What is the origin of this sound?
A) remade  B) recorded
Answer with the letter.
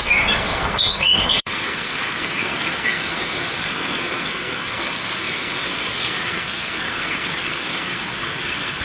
A